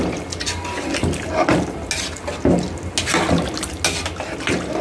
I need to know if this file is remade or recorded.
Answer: recorded